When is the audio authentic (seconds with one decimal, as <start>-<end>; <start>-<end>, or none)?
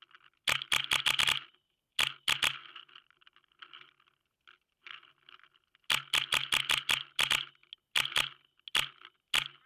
0.0-9.7